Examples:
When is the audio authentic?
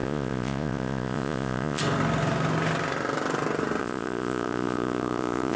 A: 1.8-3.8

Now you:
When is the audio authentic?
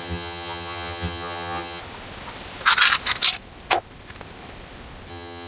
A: 1.8-5.1